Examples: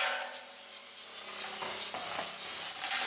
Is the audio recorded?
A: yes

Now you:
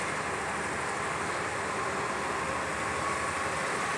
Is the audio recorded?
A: yes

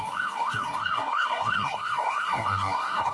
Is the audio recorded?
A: no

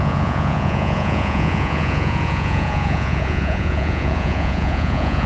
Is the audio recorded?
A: no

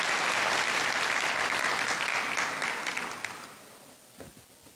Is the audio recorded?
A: yes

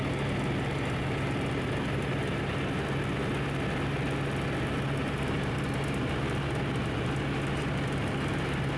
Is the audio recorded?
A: yes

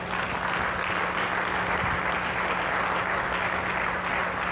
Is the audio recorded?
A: yes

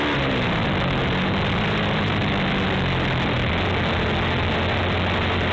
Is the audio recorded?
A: yes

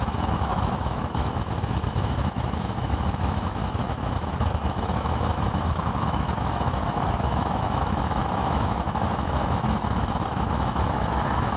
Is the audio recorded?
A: no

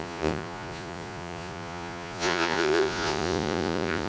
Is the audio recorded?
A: no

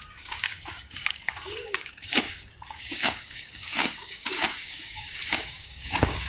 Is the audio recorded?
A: no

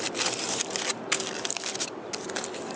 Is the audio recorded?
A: yes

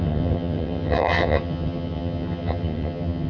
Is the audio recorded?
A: no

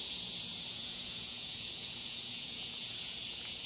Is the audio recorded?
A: no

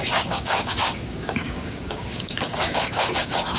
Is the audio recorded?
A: no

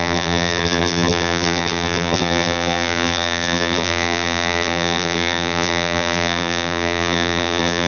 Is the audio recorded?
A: no